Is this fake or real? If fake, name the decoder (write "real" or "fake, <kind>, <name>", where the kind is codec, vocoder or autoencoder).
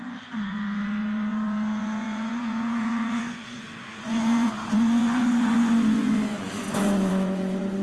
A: fake, vocoder, Vocos